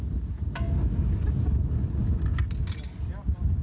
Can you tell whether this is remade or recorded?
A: recorded